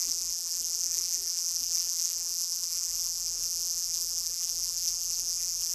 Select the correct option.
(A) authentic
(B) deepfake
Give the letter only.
B